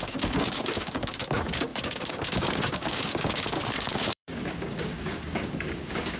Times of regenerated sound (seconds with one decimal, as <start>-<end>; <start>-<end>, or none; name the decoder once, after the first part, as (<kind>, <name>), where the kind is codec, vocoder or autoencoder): 0.0-6.2 (codec, DAC)